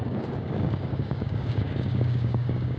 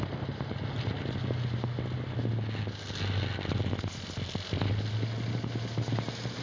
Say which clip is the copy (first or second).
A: first